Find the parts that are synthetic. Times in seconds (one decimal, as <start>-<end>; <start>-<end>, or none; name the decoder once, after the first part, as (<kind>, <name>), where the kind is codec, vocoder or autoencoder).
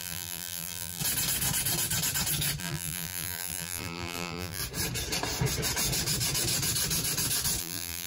0.0-1.0 (vocoder, BigVGAN v2); 2.6-4.6; 7.6-8.1